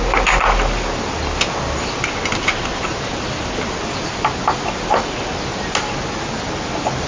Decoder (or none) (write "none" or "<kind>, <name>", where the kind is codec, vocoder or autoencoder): none